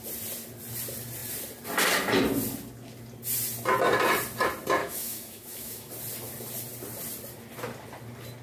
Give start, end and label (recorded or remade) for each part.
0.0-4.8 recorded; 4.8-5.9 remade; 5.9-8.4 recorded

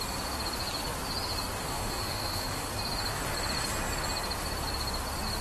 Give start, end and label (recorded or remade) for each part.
0.0-1.6 recorded; 1.6-2.7 remade; 2.7-5.4 recorded

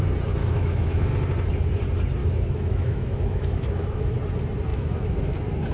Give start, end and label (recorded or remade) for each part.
0.0-0.4 recorded; 0.4-1.1 remade; 1.1-2.2 recorded; 2.2-4.2 remade; 4.2-4.7 recorded; 4.7-5.2 remade; 5.2-5.7 recorded

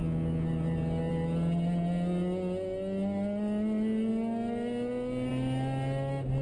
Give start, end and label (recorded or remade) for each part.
0.0-6.4 recorded

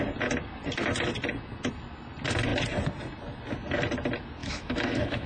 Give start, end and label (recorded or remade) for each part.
0.0-4.4 recorded; 4.4-5.3 remade

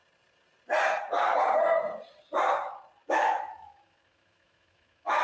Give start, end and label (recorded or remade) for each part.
0.0-3.1 recorded; 3.1-5.2 remade

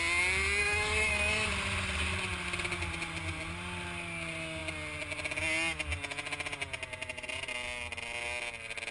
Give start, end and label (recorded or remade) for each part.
0.0-0.6 recorded; 0.6-1.5 remade; 1.5-8.9 recorded